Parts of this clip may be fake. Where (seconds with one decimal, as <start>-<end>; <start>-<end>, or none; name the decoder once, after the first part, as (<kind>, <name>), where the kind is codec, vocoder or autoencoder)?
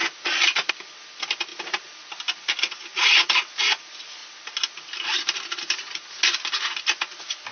none